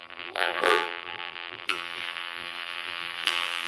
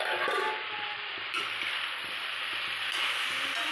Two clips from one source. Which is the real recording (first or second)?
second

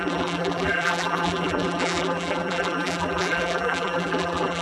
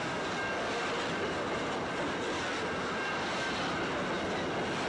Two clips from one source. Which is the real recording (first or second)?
second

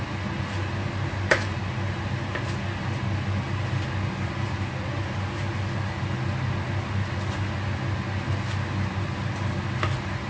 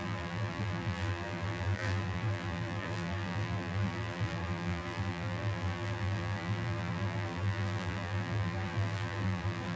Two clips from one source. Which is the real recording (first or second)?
first